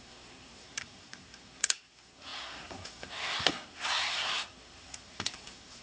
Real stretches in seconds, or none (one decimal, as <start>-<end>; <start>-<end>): none